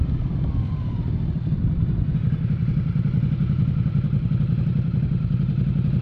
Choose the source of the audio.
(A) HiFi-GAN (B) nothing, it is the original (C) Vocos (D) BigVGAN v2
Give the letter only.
B